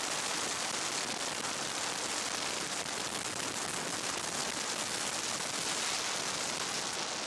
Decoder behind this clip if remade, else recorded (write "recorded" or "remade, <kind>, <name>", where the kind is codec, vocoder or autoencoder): recorded